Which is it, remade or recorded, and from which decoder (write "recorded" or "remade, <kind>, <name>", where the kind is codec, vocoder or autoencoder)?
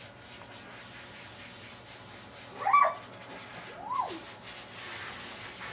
recorded